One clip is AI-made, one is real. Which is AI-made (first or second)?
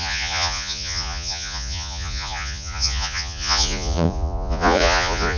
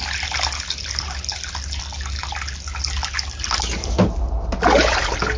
first